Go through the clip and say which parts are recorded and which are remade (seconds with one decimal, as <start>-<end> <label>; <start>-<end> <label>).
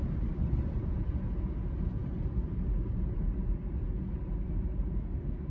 0.0-5.5 recorded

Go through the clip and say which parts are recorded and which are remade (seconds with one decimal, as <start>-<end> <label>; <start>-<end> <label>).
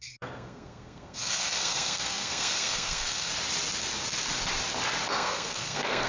0.0-3.3 remade; 3.3-5.1 recorded; 5.1-6.1 remade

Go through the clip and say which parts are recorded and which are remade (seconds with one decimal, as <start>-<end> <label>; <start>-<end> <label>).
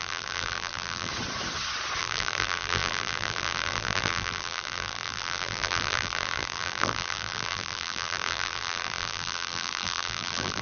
0.0-1.1 remade; 1.1-2.0 recorded; 2.0-10.6 remade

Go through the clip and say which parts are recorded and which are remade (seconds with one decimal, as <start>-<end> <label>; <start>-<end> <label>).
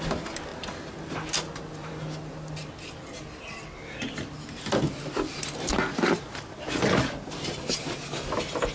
0.0-8.7 recorded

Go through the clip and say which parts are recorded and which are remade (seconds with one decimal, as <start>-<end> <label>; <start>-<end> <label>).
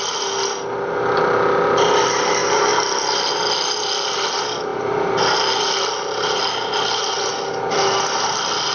0.0-4.7 recorded; 4.7-5.4 remade; 5.4-8.7 recorded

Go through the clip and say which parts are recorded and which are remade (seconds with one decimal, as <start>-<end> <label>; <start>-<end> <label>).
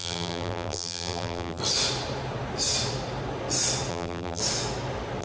0.0-1.6 remade; 1.6-3.9 recorded; 3.9-4.4 remade; 4.4-5.2 recorded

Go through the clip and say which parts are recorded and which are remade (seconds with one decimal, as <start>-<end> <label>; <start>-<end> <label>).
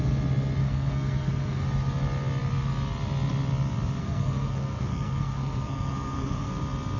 0.0-0.6 recorded; 0.6-1.6 remade; 1.6-4.0 recorded; 4.0-6.5 remade; 6.5-7.0 recorded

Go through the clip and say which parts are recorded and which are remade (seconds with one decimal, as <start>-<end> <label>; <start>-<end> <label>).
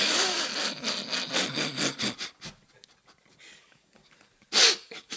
0.0-0.5 remade; 0.5-3.6 recorded; 3.6-4.0 remade; 4.0-4.6 recorded; 4.6-5.2 remade